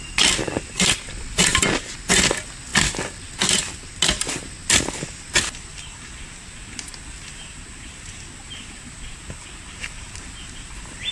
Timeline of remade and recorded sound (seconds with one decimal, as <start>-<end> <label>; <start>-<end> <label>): 0.0-11.1 recorded

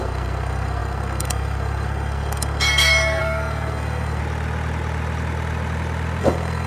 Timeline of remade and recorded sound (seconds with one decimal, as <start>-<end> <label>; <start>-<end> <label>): 0.0-4.2 remade; 4.2-6.2 recorded; 6.2-6.7 remade

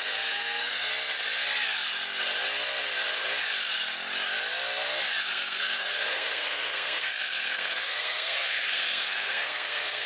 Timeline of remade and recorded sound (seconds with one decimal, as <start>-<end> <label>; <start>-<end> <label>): 0.0-0.9 remade; 0.9-5.2 recorded; 5.2-10.1 remade

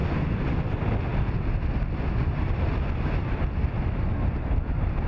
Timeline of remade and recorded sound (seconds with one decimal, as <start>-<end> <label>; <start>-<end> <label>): 0.0-5.1 recorded

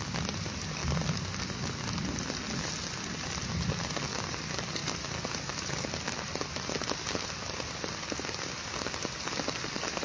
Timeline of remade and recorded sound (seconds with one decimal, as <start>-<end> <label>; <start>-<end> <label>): 0.0-10.0 recorded

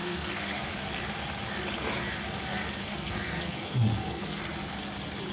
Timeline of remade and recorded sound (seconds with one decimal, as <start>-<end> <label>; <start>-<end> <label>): 0.0-0.7 remade; 0.7-2.8 recorded; 2.8-4.4 remade; 4.4-5.3 recorded

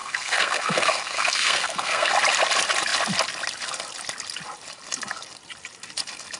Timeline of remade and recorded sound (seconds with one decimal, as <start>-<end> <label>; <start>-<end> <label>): 0.0-2.1 remade; 2.1-6.4 recorded

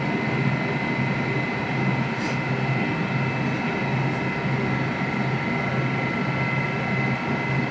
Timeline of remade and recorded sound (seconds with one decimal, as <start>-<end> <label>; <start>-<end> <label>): 0.0-7.7 recorded